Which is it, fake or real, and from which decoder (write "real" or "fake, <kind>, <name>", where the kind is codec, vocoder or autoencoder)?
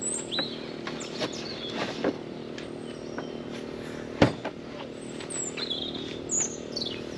real